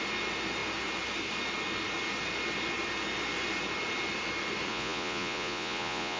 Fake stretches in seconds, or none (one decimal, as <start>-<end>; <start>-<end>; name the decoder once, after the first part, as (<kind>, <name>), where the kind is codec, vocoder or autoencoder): 4.7-6.2 (vocoder, Vocos)